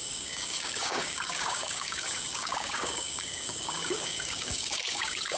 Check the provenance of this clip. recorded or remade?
remade